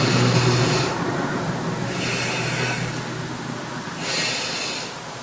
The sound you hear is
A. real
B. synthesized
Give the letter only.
A